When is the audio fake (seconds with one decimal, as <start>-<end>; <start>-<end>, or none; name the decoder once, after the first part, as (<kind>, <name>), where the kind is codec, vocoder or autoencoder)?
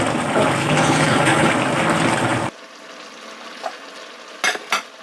0.6-1.5 (codec, HILCodec)